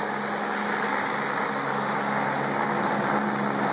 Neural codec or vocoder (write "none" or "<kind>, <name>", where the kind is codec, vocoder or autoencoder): none